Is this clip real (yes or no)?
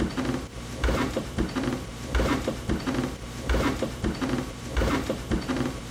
no